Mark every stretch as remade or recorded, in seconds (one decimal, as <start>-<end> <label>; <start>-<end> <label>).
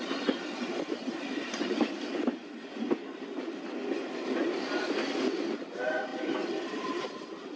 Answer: 0.0-7.6 recorded